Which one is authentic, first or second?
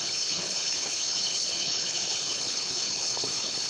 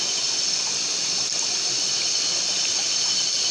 second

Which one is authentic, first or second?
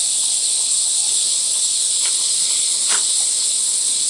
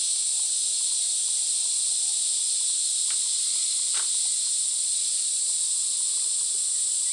second